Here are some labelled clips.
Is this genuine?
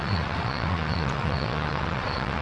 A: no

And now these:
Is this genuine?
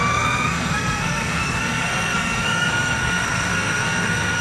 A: no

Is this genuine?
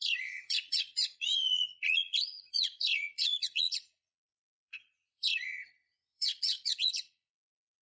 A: no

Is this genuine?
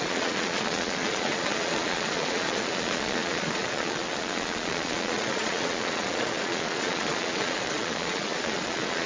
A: no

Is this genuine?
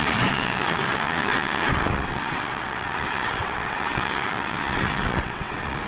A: no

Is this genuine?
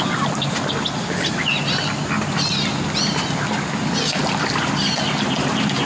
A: yes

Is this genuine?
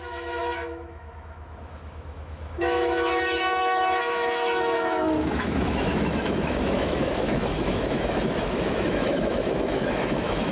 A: no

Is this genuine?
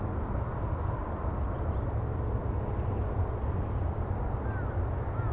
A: yes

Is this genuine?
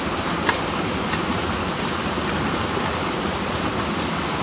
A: yes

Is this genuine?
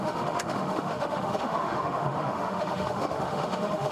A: no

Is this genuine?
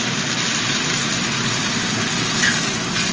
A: yes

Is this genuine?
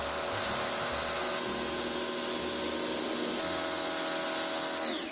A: yes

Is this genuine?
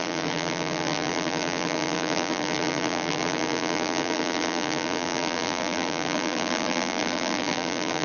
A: no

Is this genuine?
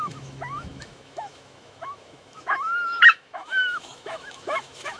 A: no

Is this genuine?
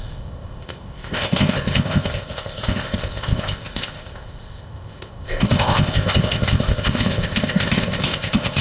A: no